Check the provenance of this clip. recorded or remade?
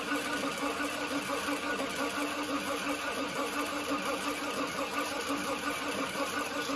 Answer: recorded